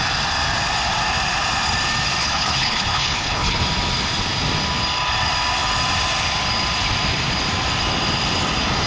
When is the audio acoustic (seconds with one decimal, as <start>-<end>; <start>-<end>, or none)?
0.0-2.2; 3.6-8.9